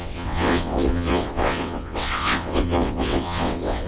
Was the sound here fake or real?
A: fake